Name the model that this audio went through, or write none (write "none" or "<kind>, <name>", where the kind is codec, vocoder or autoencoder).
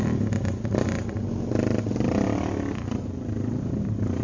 none